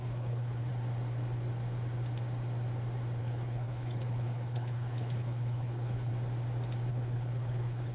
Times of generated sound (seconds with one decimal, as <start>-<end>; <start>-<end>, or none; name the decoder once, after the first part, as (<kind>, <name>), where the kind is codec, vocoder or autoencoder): 0.0-0.7 (codec, HILCodec); 3.2-6.1; 6.9-7.9